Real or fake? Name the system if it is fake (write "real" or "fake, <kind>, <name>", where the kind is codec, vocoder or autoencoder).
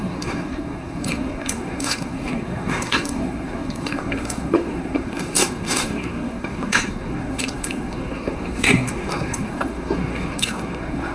fake, codec, SNAC